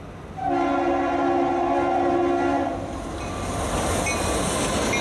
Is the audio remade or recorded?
recorded